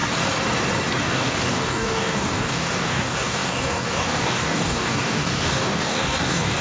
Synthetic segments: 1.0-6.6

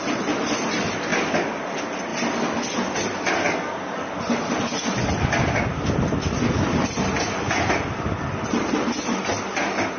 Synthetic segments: none

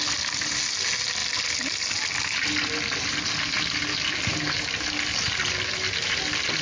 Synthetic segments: none

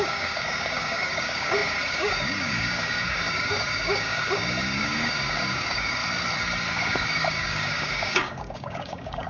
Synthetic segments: 0.0-6.0; 6.7-9.3